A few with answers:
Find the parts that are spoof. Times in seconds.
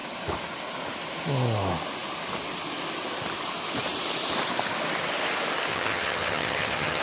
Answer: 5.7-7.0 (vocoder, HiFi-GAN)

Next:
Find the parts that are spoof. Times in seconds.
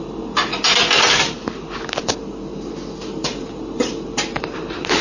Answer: none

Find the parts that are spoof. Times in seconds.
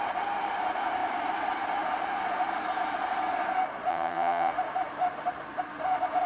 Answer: 3.9-4.5 (vocoder, HiFi-GAN)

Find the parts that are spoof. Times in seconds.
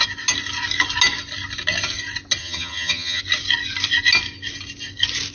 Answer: 2.4-3.2 (vocoder, HiFi-GAN)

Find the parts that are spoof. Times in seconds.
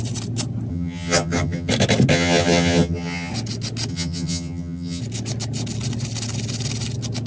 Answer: 0.7-1.7 (vocoder, HiFi-GAN); 2.1-3.3; 3.9-5.0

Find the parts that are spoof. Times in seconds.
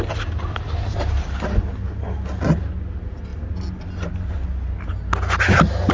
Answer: none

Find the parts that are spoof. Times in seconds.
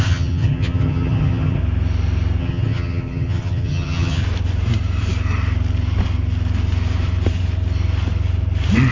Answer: 0.0-1.6 (vocoder, HiFi-GAN); 2.4-4.2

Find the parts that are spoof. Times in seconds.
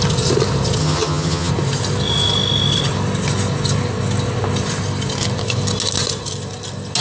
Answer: 0.8-1.5 (vocoder, HiFi-GAN)